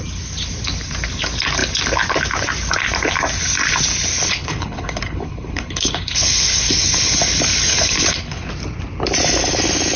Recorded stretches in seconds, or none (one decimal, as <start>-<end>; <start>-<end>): 0.0-4.1; 7.2-7.7; 8.5-10.0